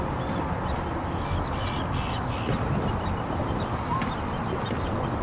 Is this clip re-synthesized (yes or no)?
no